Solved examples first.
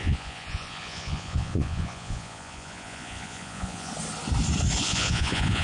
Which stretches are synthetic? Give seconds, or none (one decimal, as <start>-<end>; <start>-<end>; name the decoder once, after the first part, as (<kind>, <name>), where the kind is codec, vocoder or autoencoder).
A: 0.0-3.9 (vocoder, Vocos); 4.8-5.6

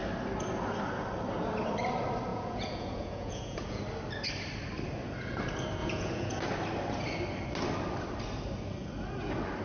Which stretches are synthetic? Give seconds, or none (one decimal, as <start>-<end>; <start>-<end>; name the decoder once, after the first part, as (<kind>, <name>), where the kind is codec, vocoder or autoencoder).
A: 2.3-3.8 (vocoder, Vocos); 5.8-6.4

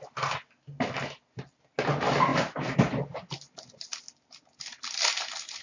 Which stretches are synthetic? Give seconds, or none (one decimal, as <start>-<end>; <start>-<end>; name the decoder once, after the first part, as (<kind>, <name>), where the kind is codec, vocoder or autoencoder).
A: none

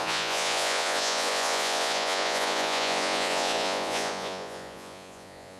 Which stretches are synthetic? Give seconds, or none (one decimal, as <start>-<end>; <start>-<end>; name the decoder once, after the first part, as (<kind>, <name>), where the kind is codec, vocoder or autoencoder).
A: 0.0-5.6 (vocoder, Vocos)